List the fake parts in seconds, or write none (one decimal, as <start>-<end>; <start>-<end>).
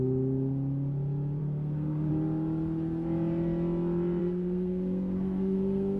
1.4-2.1; 4.2-6.0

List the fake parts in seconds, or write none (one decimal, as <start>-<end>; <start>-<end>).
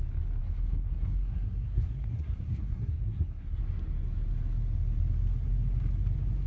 0.4-3.6